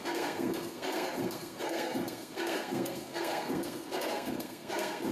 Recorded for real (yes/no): no